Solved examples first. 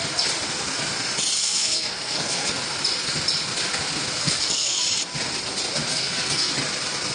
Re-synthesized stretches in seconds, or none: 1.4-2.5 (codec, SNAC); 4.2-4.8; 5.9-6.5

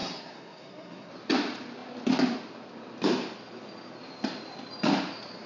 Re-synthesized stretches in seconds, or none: 0.0-1.1 (codec, SNAC)